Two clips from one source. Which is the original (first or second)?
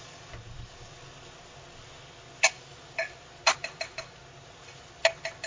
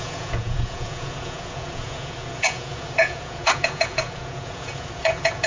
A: first